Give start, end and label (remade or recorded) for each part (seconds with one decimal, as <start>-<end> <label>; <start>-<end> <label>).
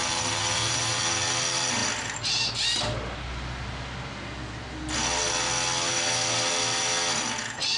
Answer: 0.0-1.0 remade; 1.0-7.8 recorded